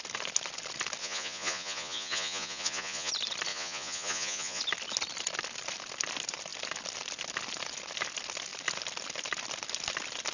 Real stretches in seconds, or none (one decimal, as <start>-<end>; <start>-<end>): 0.0-1.0; 3.1-3.5; 4.6-10.3